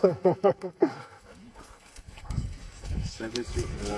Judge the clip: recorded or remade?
remade